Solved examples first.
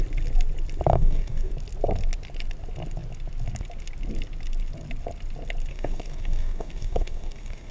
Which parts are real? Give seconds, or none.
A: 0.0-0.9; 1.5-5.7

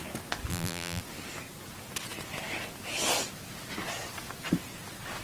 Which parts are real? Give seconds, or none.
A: 0.0-0.5; 1.0-5.2

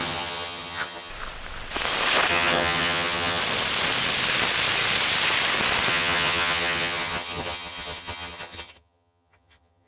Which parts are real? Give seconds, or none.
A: 1.1-2.3; 3.4-5.9

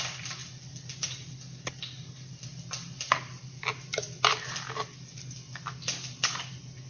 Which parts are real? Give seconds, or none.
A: 0.0-6.9

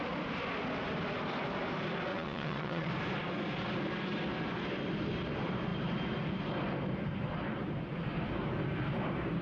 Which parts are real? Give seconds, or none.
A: 0.0-2.1; 2.9-9.4